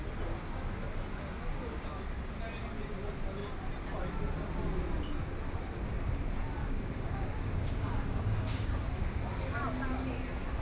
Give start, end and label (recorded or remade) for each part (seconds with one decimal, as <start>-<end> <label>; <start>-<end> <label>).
0.0-6.6 recorded; 6.6-9.2 remade; 9.2-10.6 recorded